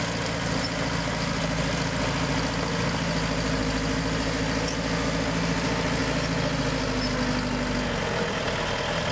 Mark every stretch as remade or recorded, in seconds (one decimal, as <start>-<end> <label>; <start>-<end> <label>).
0.0-9.1 recorded